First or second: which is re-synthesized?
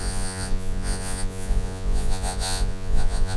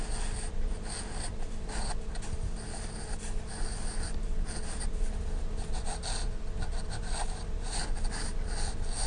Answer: first